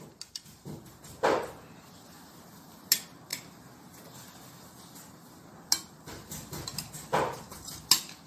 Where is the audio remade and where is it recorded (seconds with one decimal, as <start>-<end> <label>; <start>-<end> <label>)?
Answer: 0.0-8.3 recorded